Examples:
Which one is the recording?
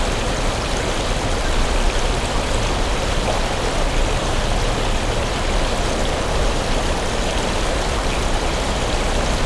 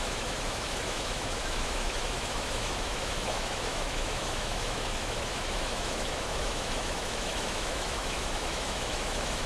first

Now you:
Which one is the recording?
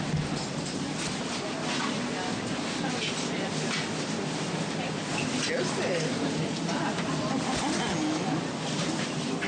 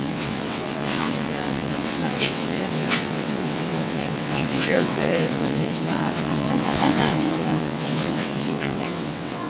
first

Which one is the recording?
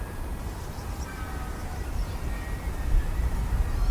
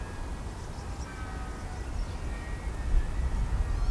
second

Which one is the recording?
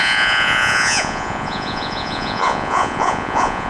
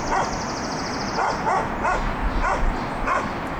second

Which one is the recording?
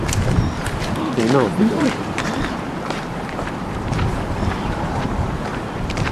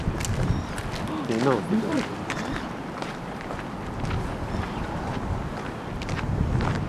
second